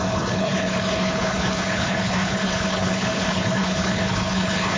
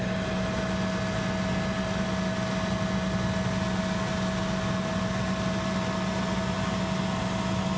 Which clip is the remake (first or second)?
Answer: first